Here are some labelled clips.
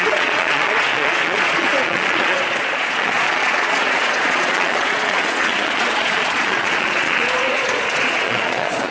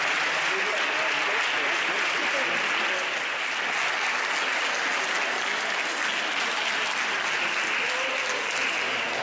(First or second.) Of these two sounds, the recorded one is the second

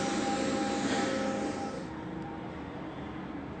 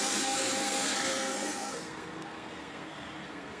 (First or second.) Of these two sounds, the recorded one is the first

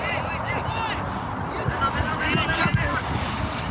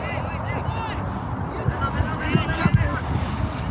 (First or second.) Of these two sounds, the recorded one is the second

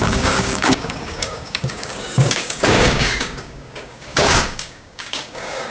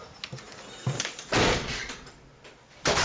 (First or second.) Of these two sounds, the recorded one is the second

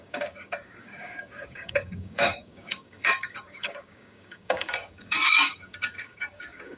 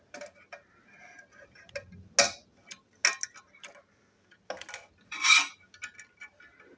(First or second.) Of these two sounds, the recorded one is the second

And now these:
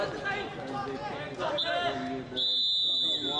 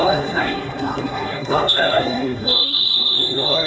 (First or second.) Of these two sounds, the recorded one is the first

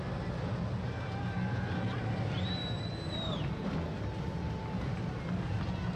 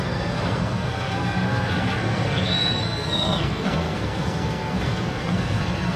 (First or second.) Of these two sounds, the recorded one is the first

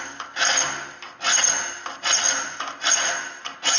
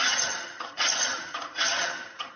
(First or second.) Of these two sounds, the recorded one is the first